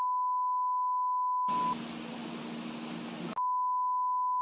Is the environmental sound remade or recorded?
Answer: recorded